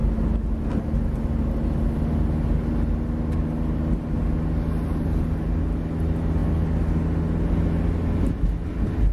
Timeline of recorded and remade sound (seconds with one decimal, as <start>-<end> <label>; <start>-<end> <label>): 0.0-9.1 recorded